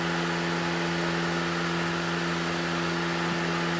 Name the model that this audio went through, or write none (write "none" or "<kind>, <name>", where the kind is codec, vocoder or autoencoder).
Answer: none